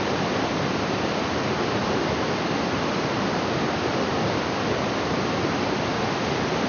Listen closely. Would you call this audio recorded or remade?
remade